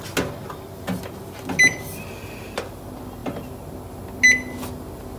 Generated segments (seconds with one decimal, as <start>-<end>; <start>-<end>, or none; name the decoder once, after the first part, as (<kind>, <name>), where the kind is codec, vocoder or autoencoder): none